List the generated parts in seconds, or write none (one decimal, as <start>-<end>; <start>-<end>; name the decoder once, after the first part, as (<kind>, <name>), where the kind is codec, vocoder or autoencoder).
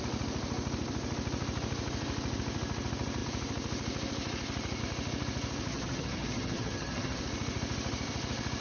5.7-7.2 (vocoder, HiFi-GAN)